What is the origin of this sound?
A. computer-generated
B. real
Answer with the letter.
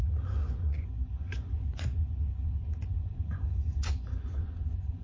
A